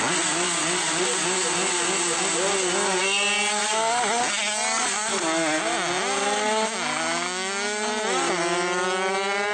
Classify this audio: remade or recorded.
recorded